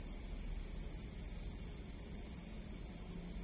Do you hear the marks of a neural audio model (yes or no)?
no